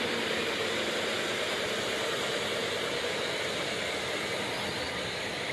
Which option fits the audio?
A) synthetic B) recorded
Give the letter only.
B